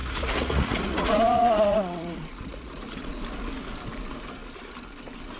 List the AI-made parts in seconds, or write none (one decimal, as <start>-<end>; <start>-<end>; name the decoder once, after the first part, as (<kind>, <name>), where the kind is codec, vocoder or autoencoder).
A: 0.0-3.2 (vocoder, Vocos)